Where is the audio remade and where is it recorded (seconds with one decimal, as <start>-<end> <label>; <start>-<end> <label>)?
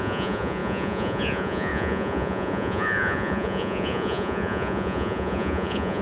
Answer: 0.0-6.0 remade